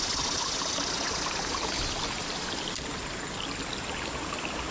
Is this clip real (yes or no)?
yes